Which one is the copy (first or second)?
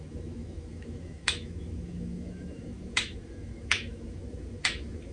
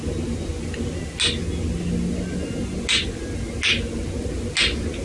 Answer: first